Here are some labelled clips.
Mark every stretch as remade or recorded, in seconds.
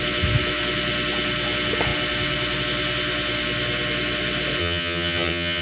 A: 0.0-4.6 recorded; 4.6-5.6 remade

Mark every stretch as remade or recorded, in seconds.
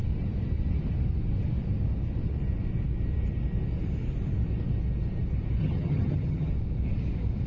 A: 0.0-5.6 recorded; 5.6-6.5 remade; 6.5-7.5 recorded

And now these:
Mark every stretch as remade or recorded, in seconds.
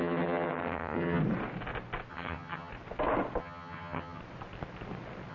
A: 0.0-1.2 remade; 1.2-2.1 recorded; 2.1-2.7 remade; 2.7-3.4 recorded; 3.4-4.2 remade; 4.2-5.3 recorded